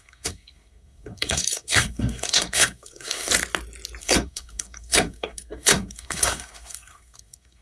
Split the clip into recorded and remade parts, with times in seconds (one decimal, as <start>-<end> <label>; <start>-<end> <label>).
0.0-3.3 remade; 3.3-4.0 recorded; 4.0-7.6 remade